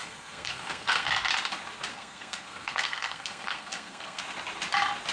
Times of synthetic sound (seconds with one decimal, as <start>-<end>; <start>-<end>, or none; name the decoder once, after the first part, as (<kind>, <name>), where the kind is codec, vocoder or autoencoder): 0.0-1.1 (codec, SNAC); 1.9-4.2